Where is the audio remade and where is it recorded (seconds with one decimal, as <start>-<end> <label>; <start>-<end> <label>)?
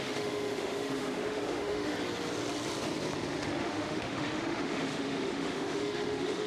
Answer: 0.0-1.9 remade; 1.9-3.6 recorded; 3.6-6.5 remade